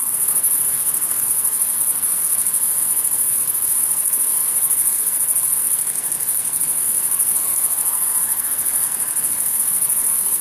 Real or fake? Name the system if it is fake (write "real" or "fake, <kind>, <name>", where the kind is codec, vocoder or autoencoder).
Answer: fake, codec, SNAC